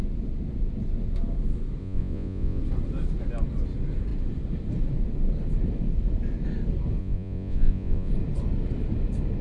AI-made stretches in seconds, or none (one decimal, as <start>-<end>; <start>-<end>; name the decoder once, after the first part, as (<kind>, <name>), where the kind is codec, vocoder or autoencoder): 1.8-2.6 (vocoder, Vocos); 7.0-8.1